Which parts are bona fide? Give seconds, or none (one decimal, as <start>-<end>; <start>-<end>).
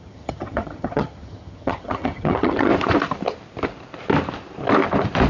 2.7-5.3